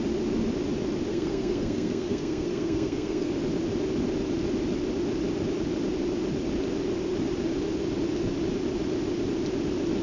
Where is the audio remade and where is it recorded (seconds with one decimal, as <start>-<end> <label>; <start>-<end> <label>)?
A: 0.0-1.1 recorded; 1.1-3.3 remade; 3.3-10.0 recorded